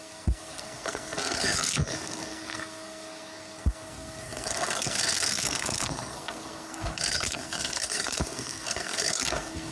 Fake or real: fake